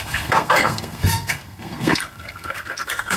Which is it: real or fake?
fake